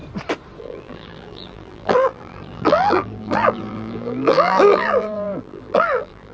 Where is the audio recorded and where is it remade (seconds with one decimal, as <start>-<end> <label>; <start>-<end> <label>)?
0.0-0.6 recorded; 0.6-6.3 remade